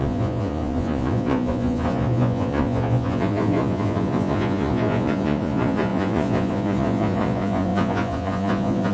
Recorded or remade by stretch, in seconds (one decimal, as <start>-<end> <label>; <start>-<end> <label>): 0.0-8.9 remade